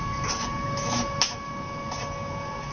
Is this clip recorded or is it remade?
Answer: recorded